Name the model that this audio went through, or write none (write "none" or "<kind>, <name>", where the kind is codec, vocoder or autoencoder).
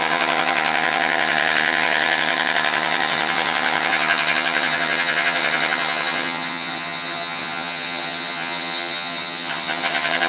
vocoder, HiFi-GAN